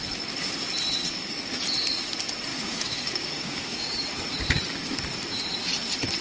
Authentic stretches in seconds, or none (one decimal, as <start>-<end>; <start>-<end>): 0.0-1.0; 1.6-2.5; 3.9-6.2